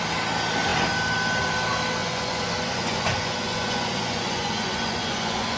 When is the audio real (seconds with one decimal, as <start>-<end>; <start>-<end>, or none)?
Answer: 0.0-2.0